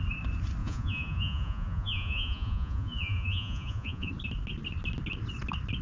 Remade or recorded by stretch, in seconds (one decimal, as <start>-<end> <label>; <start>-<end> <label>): 0.0-0.6 recorded; 0.6-4.1 remade; 4.1-5.8 recorded